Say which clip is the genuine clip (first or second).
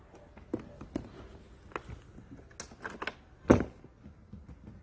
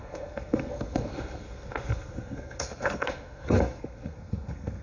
first